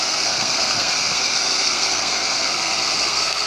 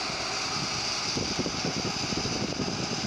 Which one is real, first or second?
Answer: second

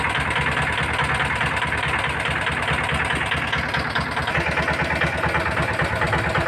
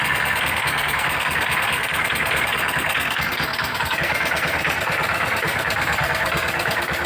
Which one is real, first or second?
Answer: first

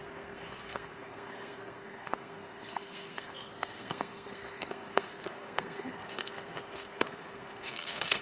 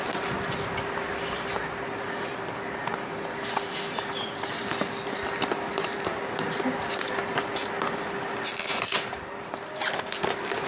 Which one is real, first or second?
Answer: second